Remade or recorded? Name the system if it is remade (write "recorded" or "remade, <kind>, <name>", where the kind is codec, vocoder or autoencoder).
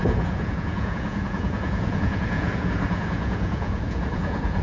remade, vocoder, Vocos